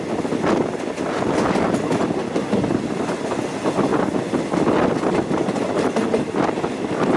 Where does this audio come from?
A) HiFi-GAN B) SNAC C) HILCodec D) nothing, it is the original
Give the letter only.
D